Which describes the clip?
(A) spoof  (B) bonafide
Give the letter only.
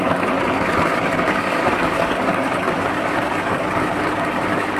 A